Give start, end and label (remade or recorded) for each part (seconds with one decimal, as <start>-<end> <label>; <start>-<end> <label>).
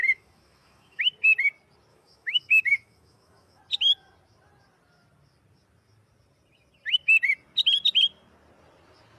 0.0-1.0 remade; 1.0-1.9 recorded; 1.9-3.6 remade; 3.6-9.2 recorded